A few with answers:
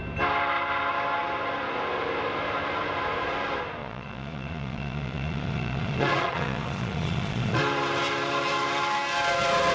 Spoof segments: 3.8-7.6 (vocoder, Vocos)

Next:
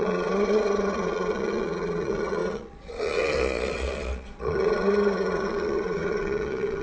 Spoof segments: 0.0-6.8 (vocoder, Vocos)

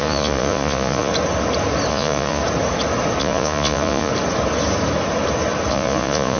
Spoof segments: 0.0-1.1 (vocoder, Vocos); 1.9-2.4; 3.2-4.1; 5.7-6.4

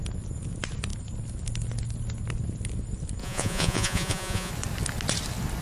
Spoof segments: 3.2-4.5 (vocoder, Vocos)

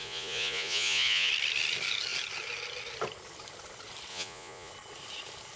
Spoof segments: 0.0-1.3 (vocoder, Vocos); 4.1-4.7

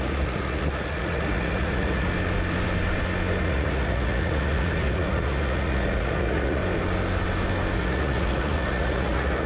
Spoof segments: 0.0-2.1 (vocoder, Vocos); 3.4-6.6; 7.8-9.5